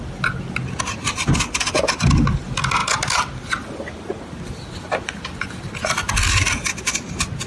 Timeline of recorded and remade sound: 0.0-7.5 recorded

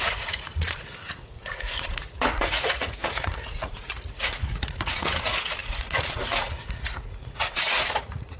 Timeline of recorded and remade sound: 0.0-8.4 remade

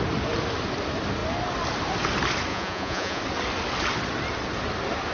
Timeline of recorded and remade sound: 0.0-2.5 recorded; 2.5-3.2 remade; 3.2-5.1 recorded

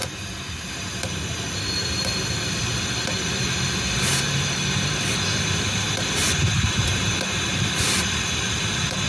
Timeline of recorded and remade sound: 0.0-9.1 recorded

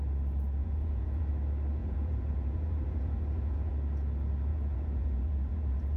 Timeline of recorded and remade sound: 0.0-0.6 recorded; 0.6-1.3 remade; 1.3-1.8 recorded; 1.8-3.7 remade; 3.7-4.5 recorded; 4.5-6.0 remade

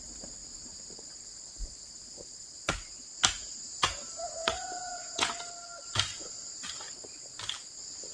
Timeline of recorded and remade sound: 0.0-4.4 recorded; 4.4-5.4 remade; 5.4-8.1 recorded

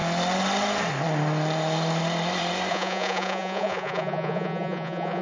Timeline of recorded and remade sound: 0.0-2.7 recorded; 2.7-5.2 remade

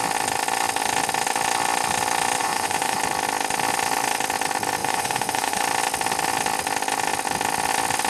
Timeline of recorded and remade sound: 0.0-2.4 recorded; 2.4-3.0 remade; 3.0-4.8 recorded; 4.8-5.6 remade; 5.6-8.1 recorded